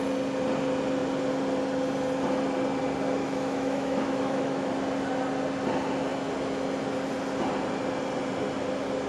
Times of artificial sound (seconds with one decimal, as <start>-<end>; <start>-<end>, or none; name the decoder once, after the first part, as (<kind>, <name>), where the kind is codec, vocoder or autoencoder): 3.2-4.7 (autoencoder, DAC-VAE)